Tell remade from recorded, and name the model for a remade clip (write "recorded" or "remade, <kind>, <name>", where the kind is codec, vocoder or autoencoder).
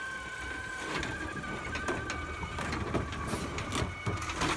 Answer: recorded